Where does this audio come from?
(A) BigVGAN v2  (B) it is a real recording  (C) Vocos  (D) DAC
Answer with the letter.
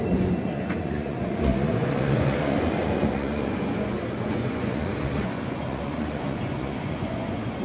C